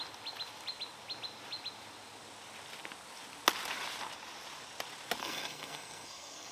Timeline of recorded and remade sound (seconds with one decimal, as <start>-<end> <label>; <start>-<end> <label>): 0.0-5.2 recorded; 5.2-6.5 remade